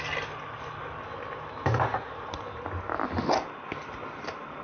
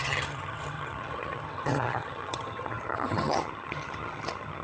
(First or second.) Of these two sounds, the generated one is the second